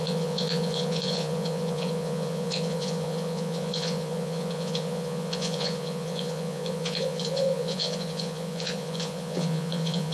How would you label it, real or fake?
fake